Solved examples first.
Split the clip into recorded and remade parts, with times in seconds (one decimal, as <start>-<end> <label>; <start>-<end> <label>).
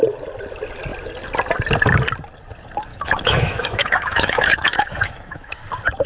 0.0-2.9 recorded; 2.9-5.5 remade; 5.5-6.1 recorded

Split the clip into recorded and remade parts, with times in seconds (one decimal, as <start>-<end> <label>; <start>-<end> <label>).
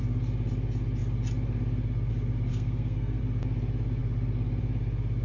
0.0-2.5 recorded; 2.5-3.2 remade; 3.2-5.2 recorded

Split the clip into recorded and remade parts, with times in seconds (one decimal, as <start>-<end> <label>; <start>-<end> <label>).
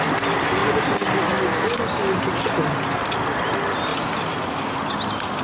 0.0-0.6 recorded; 0.6-1.3 remade; 1.3-5.4 recorded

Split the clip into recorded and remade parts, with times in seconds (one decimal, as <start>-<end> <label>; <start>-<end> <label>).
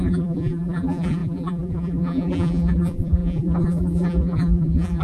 0.0-5.0 remade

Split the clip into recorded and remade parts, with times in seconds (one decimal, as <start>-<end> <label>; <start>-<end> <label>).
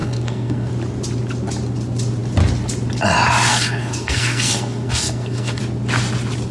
0.0-0.7 remade; 0.7-3.5 recorded; 3.5-5.6 remade; 5.6-6.5 recorded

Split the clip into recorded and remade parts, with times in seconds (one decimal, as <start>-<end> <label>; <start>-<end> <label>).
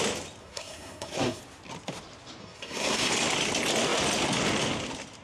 0.0-0.4 recorded; 0.4-1.4 remade; 1.4-2.4 recorded; 2.4-3.1 remade; 3.1-5.2 recorded